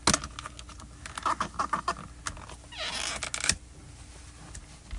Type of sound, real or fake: real